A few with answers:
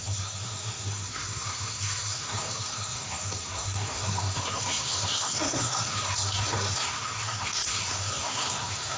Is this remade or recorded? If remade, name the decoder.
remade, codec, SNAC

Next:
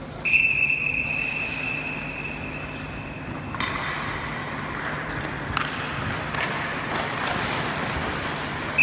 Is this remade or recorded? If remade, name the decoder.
remade, vocoder, BigVGAN v2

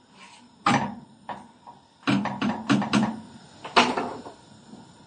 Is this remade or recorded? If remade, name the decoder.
recorded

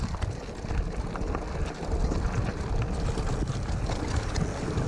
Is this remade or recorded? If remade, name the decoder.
recorded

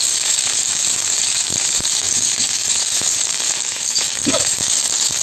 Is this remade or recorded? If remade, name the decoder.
remade, codec, DAC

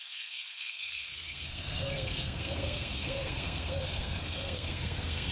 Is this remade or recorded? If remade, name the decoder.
remade, codec, SNAC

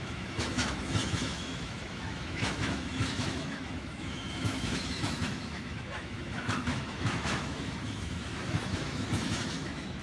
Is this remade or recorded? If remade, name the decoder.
remade, autoencoder, DAC-VAE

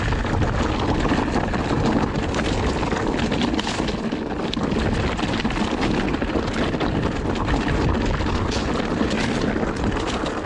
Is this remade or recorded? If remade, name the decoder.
recorded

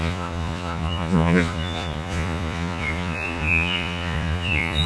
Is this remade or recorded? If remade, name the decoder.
remade, vocoder, Vocos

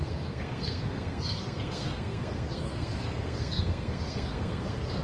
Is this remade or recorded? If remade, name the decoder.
remade, codec, SNAC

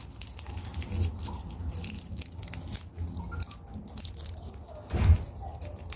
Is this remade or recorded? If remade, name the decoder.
recorded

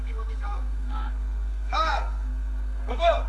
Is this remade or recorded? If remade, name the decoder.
remade, codec, SNAC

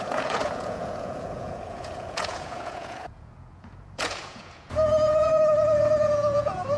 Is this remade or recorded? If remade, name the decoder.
remade, vocoder, Vocos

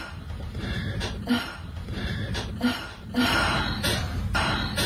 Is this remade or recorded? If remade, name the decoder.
remade, vocoder, BigVGAN v2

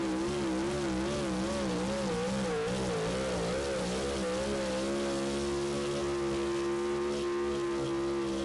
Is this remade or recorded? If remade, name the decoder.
recorded